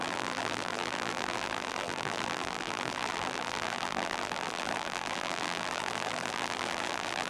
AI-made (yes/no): yes